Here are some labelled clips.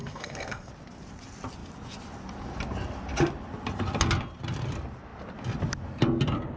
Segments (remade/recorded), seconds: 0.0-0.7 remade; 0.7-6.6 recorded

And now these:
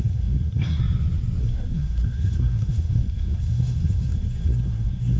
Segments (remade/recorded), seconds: 0.0-0.8 remade; 0.8-1.4 recorded; 1.4-5.2 remade

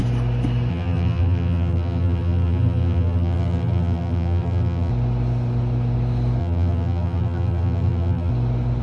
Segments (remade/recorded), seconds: 0.0-0.7 recorded; 0.7-4.9 remade; 4.9-6.4 recorded; 6.4-8.3 remade; 8.3-8.8 recorded

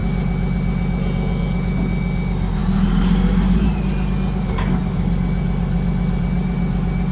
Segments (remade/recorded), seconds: 0.0-7.1 recorded

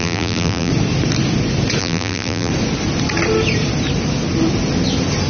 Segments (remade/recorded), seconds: 0.0-0.7 remade; 0.7-1.8 recorded; 1.8-2.5 remade; 2.5-5.3 recorded

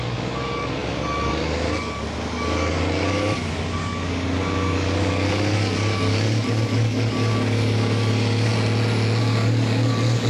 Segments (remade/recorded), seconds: 0.0-8.5 remade; 8.5-9.2 recorded; 9.2-10.3 remade